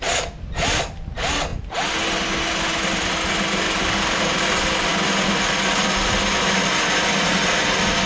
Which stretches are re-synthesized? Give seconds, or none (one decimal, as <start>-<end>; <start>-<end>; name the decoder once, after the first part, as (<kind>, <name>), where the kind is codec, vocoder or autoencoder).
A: none